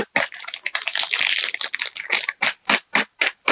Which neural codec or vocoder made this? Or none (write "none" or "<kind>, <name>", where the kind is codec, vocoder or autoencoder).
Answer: none